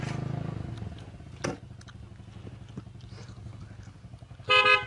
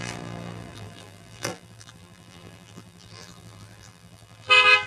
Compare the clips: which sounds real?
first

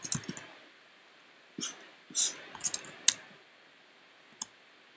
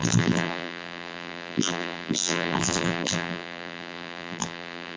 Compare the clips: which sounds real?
first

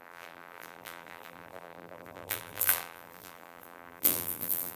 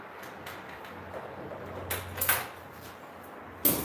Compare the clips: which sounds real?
second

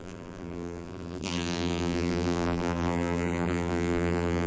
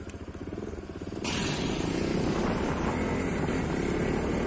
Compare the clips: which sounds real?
second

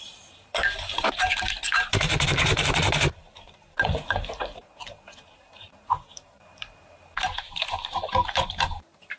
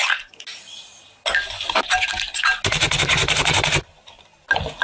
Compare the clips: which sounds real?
second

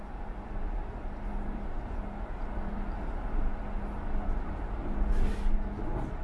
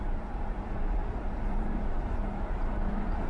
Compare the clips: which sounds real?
first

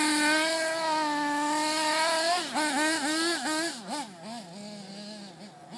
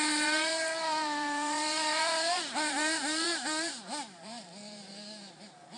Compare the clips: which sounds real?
first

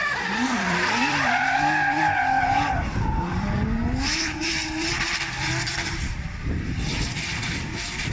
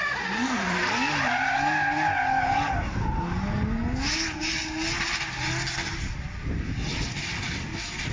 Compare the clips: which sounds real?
second